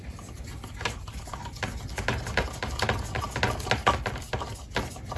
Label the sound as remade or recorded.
recorded